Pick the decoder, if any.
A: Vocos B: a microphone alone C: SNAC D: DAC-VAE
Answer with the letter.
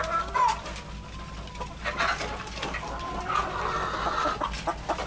B